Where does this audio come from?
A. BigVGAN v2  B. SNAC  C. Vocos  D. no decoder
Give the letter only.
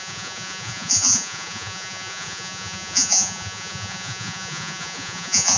C